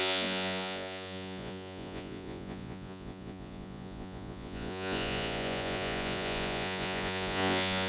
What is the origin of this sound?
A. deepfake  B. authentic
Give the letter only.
A